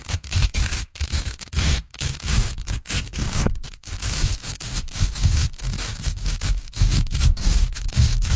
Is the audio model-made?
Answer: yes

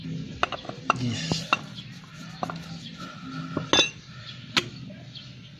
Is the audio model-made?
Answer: no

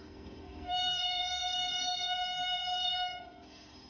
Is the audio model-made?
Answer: yes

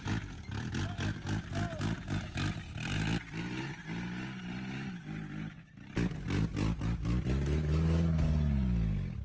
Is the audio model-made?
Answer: no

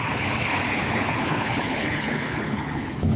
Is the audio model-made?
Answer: yes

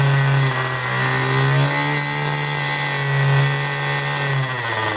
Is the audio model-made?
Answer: no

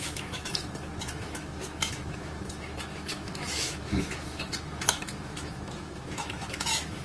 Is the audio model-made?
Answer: yes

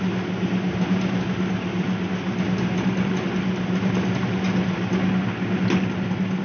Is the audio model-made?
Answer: no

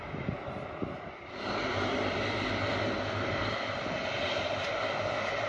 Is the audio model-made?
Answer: no